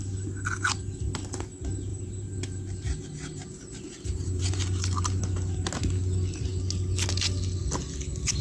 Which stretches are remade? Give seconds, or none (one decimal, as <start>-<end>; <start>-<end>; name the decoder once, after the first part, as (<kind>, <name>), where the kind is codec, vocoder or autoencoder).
1.9-5.2 (vocoder, BigVGAN v2)